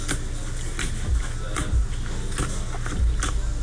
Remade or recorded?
recorded